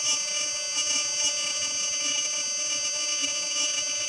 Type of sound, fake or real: fake